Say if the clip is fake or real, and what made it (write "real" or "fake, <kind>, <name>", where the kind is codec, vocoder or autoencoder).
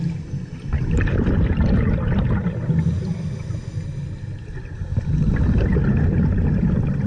real